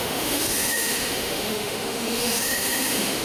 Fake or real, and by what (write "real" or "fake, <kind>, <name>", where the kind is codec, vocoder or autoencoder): fake, autoencoder, DAC-VAE